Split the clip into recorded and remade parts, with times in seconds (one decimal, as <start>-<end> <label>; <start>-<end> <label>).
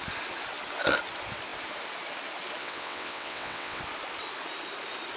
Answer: 0.0-2.6 recorded; 2.6-3.8 remade; 3.8-5.2 recorded